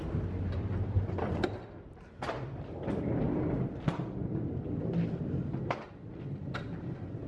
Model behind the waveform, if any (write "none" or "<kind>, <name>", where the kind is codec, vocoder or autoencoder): none